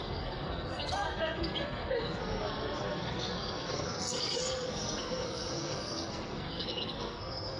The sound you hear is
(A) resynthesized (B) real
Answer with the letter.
A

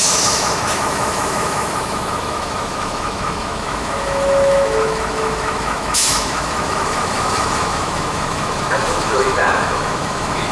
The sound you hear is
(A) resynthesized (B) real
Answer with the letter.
A